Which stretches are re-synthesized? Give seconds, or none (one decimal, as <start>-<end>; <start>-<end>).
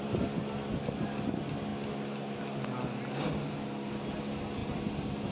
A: none